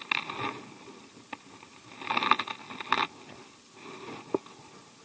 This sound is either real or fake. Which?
real